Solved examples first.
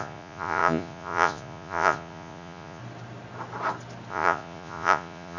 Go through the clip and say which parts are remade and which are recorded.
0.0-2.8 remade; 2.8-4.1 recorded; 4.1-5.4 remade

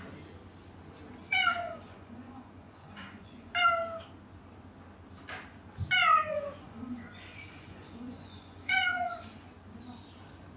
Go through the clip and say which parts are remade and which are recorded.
0.0-1.2 recorded; 1.2-3.5 remade; 3.5-6.0 recorded; 6.0-9.5 remade; 9.5-10.6 recorded

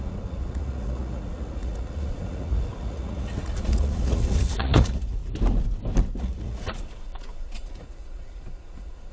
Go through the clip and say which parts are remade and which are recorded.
0.0-5.2 remade; 5.2-6.2 recorded; 6.2-9.1 remade

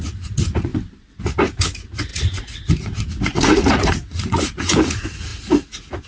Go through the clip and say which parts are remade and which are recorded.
0.0-0.7 remade; 0.7-1.2 recorded; 1.2-6.1 remade